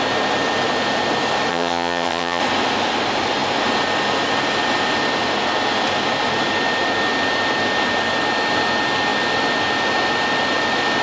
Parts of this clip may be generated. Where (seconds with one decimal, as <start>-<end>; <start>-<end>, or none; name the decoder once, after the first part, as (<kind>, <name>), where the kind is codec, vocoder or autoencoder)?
1.5-2.4 (vocoder, HiFi-GAN)